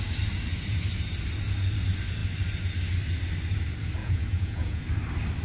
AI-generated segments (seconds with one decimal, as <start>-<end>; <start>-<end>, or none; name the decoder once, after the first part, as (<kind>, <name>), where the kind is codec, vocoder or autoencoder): 4.0-4.8 (vocoder, Vocos)